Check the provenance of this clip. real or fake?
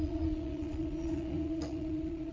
fake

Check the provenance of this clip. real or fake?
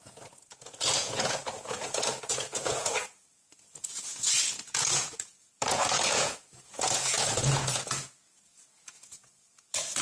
fake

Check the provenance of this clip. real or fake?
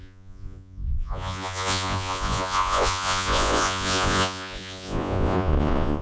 fake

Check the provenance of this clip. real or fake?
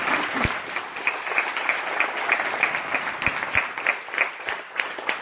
real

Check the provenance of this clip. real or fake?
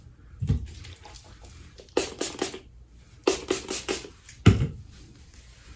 real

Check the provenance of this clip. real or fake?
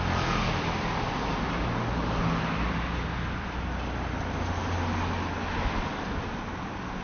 real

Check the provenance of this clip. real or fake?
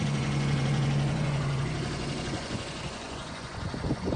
fake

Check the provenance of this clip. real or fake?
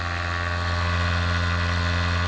real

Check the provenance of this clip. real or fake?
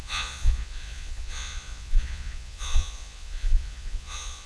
fake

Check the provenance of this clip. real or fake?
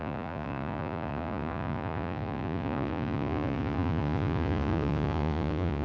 fake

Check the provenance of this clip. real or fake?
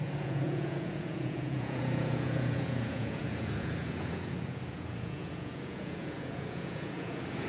fake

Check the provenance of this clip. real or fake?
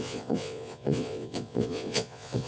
fake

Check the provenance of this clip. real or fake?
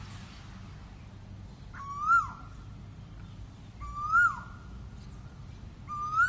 real